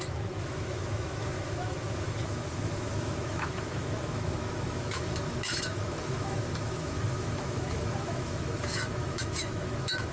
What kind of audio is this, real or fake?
fake